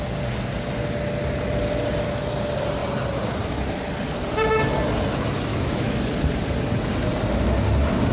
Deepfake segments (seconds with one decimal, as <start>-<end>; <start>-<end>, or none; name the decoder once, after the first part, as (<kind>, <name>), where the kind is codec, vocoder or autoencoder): 5.5-6.0 (autoencoder, DAC-VAE)